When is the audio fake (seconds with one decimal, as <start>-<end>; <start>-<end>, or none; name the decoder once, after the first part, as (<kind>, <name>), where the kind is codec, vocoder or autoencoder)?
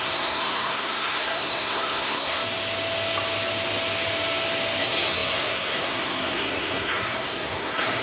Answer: 0.0-2.4 (codec, SNAC); 4.8-8.0